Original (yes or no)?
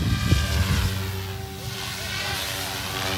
yes